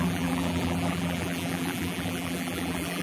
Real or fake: fake